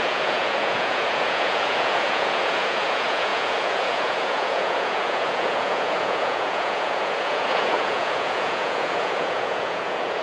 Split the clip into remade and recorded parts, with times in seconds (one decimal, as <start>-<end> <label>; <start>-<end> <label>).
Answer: 0.0-10.2 remade

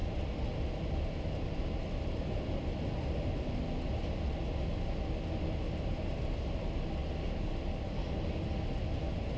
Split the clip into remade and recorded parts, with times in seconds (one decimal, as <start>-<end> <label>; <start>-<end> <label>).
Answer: 0.0-9.4 recorded

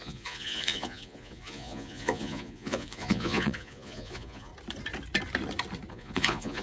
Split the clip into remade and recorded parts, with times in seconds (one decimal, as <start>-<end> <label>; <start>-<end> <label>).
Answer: 0.0-4.5 remade; 4.5-5.9 recorded; 5.9-6.6 remade